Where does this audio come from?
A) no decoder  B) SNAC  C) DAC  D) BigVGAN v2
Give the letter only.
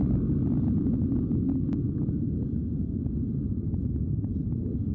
A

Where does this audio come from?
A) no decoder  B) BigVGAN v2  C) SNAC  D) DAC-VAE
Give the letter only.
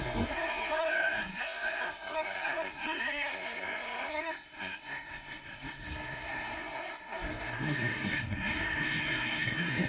C